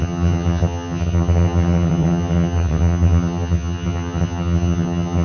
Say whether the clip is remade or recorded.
remade